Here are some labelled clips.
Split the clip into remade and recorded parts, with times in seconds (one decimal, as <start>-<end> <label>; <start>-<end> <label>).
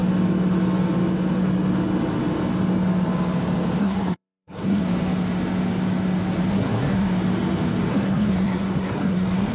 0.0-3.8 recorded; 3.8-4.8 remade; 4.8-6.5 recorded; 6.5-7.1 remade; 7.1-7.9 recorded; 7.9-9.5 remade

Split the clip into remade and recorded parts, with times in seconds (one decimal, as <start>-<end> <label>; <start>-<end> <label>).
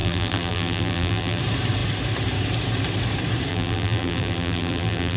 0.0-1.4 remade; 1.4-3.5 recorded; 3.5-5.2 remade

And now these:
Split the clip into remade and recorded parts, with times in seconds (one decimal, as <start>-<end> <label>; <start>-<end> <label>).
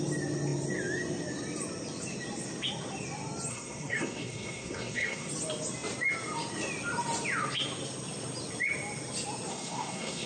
0.0-3.5 recorded; 3.5-5.3 remade; 5.3-9.5 recorded; 9.5-10.3 remade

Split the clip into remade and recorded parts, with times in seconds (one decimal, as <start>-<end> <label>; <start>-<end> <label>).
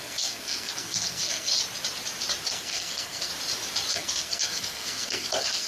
0.0-1.5 remade; 1.5-2.5 recorded; 2.5-3.3 remade; 3.3-3.9 recorded; 3.9-5.7 remade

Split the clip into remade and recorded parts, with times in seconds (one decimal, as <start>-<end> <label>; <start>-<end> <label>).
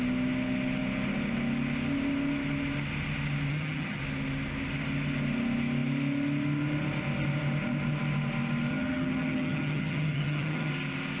0.0-3.5 recorded; 3.5-4.0 remade; 4.0-8.7 recorded; 8.7-10.7 remade; 10.7-11.2 recorded